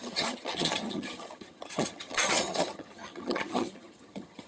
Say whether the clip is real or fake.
fake